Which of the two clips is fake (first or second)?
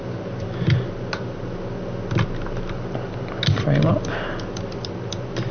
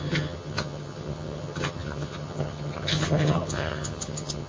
second